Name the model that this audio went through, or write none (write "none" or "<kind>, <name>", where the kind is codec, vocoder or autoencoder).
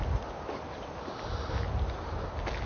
none